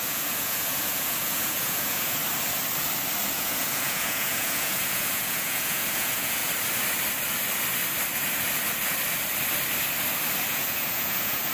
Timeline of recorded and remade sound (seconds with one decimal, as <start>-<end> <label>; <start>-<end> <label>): 0.0-2.2 remade; 2.2-3.3 recorded; 3.3-6.4 remade; 6.4-10.5 recorded; 10.5-11.5 remade